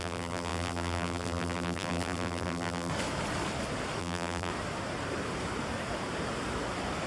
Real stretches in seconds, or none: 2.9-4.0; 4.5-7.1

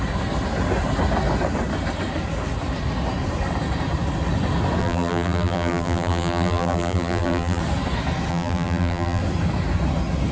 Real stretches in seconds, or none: 0.0-4.8; 7.6-8.3; 9.2-10.3

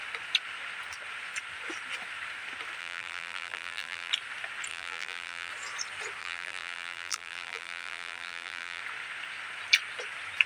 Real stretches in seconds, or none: 0.0-2.8; 4.1-4.7; 5.5-6.2; 8.8-10.5

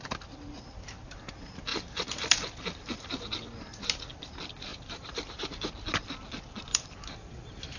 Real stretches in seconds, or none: 0.0-1.7; 2.4-4.7; 5.5-6.7

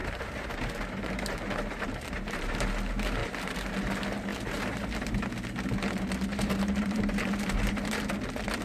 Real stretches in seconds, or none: 2.7-3.2; 3.7-4.3; 5.3-6.3; 8.1-8.6

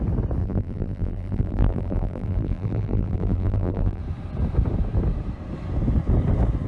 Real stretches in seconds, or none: 0.0-0.4; 4.0-6.7

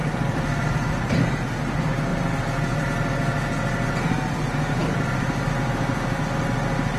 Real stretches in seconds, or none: 1.4-4.8; 5.5-7.0